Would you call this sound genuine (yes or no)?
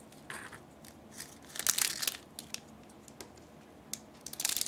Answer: yes